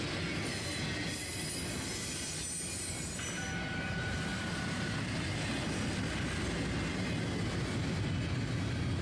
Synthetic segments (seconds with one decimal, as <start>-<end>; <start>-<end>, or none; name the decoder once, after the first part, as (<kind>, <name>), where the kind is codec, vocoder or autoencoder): 4.3-5.2 (vocoder, BigVGAN v2)